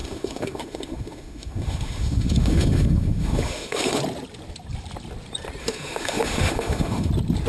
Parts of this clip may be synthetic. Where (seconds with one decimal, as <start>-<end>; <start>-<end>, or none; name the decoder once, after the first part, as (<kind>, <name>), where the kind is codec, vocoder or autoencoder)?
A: 0.0-4.0 (autoencoder, DAC-VAE); 5.6-7.1